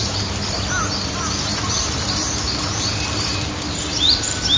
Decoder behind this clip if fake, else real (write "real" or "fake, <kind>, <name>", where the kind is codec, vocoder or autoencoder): fake, vocoder, BigVGAN v2